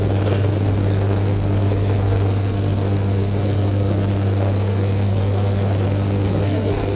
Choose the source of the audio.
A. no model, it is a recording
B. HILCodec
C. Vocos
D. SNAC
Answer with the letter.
D